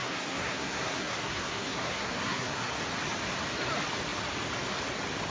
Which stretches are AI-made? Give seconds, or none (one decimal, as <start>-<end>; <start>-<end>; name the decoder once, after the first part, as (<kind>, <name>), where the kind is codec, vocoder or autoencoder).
0.0-2.7 (codec, SNAC)